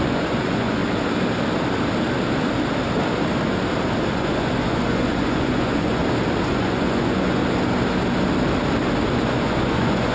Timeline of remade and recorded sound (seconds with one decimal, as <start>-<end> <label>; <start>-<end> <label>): 0.0-0.8 remade; 0.8-4.1 recorded; 4.1-6.0 remade; 6.0-6.5 recorded; 6.5-7.4 remade; 7.4-9.1 recorded; 9.1-10.1 remade